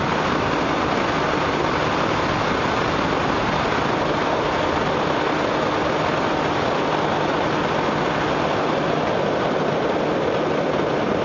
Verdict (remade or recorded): recorded